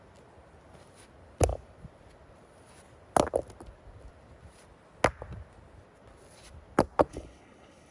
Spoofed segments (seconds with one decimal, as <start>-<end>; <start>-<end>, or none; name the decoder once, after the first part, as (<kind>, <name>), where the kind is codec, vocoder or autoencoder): 7.1-7.9 (codec, HILCodec)